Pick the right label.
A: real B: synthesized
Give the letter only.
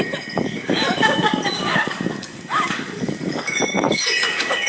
B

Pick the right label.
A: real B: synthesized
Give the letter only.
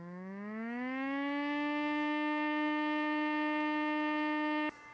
B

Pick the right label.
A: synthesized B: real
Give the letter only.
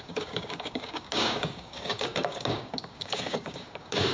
A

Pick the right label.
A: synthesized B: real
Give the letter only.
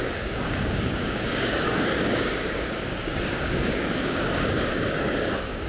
A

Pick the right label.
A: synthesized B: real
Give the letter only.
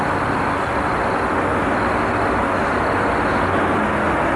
B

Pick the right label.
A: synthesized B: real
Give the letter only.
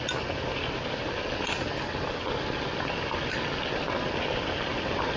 B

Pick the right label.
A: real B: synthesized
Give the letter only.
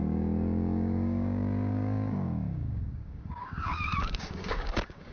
B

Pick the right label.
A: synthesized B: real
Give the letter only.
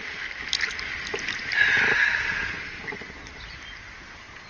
B